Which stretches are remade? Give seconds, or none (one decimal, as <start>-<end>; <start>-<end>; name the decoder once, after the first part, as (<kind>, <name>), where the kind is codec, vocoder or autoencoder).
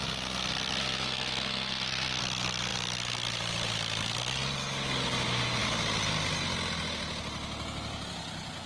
0.8-2.2 (codec, SNAC)